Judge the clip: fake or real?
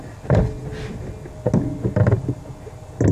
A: real